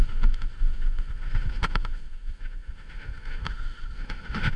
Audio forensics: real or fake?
fake